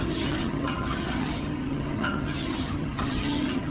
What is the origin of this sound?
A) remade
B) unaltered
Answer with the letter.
A